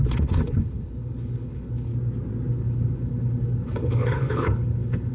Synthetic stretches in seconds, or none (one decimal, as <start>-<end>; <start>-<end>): 0.0-1.9; 2.5-5.1